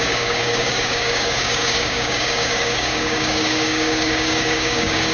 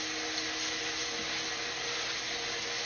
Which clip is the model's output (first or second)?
first